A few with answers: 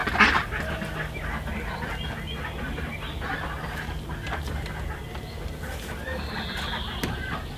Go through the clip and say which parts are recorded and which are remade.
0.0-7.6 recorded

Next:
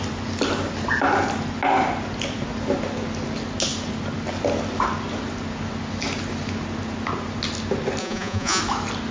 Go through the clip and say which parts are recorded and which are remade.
0.0-8.0 recorded; 8.0-8.6 remade; 8.6-9.1 recorded

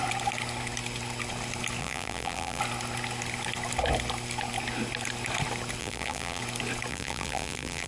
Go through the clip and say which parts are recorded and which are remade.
0.0-1.8 recorded; 1.8-2.6 remade; 2.6-5.8 recorded; 5.8-6.4 remade; 6.4-6.9 recorded; 6.9-7.9 remade

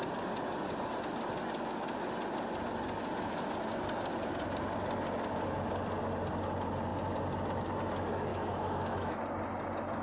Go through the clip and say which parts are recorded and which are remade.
0.0-8.3 recorded; 8.3-9.2 remade; 9.2-10.0 recorded

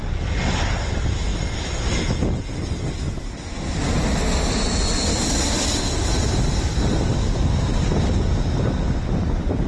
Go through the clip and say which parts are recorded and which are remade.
0.0-9.7 recorded